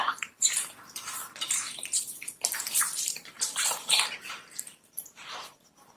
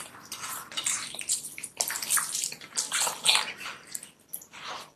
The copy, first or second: first